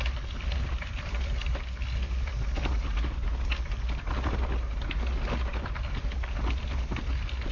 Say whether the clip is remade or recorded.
recorded